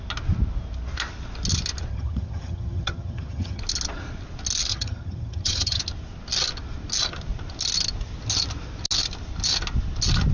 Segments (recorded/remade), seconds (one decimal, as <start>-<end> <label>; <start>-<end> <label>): 0.0-1.9 recorded; 1.9-3.6 remade; 3.6-4.7 recorded; 4.7-5.8 remade; 5.8-10.3 recorded